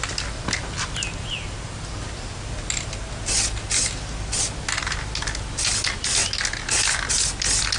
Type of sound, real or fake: real